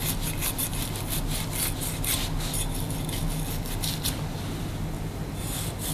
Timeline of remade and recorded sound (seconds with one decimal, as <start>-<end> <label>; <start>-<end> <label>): 0.0-5.9 recorded